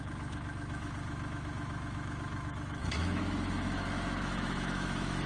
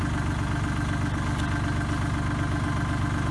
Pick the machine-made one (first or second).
first